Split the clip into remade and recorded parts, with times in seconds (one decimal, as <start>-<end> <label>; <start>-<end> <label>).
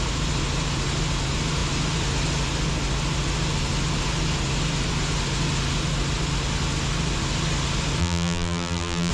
0.0-8.0 recorded; 8.0-9.1 remade